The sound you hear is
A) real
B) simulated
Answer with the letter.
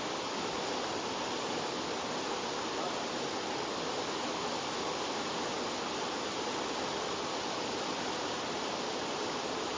A